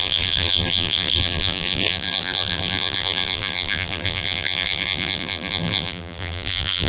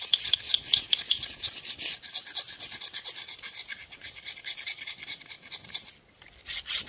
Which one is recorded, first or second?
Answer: second